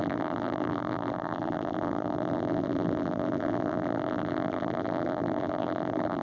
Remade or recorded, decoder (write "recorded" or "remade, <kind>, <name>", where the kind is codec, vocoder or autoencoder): remade, vocoder, BigVGAN v2